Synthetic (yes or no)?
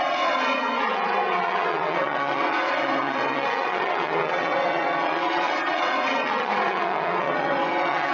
yes